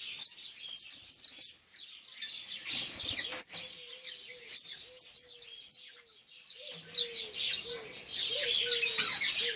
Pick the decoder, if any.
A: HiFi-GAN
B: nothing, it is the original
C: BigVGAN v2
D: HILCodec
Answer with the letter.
B